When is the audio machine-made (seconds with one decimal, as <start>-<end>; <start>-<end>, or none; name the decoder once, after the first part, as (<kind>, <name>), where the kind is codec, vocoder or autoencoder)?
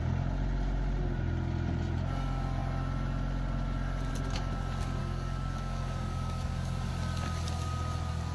5.0-6.9 (codec, DAC)